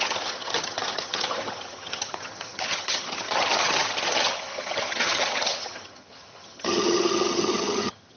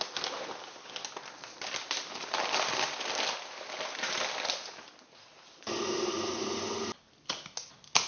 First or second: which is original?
second